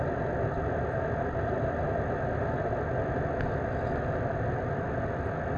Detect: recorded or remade recorded